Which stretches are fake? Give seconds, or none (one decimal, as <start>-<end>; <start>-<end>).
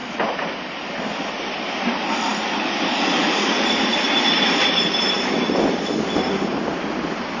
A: 0.0-6.5